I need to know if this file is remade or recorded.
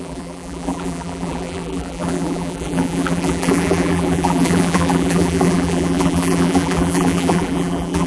remade